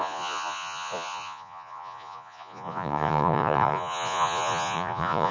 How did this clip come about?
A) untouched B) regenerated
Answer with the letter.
B